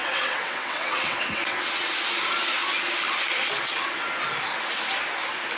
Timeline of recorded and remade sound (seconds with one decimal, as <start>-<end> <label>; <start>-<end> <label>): 0.0-1.9 remade; 1.9-5.6 recorded